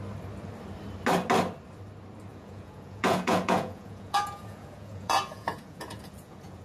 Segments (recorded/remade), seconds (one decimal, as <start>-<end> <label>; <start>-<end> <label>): 0.0-2.3 recorded; 2.3-6.6 remade